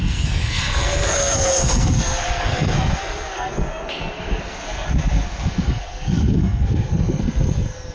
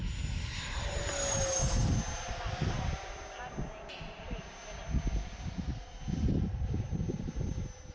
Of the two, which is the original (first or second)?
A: second